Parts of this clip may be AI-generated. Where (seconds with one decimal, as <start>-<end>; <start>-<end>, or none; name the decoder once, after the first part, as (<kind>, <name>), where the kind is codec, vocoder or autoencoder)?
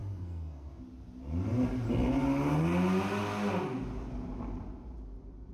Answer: 0.0-0.8 (codec, SNAC)